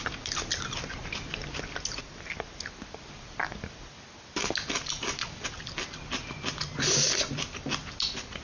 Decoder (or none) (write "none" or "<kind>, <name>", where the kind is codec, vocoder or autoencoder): none